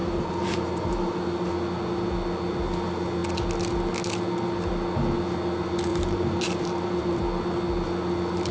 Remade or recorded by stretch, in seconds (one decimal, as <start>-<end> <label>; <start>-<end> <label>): 0.0-1.2 remade; 1.2-5.9 recorded; 5.9-7.2 remade; 7.2-8.5 recorded